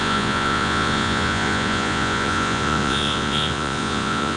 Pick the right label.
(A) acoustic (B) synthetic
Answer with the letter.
B